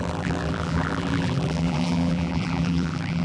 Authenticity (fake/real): fake